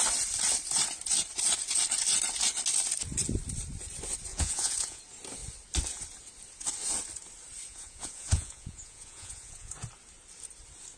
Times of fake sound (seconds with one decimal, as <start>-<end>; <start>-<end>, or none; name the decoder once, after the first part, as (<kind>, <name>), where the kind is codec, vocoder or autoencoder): 4.3-5.0 (vocoder, Vocos); 7.7-9.7